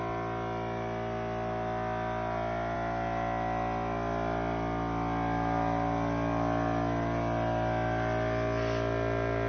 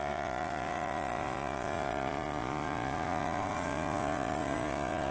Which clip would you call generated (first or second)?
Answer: second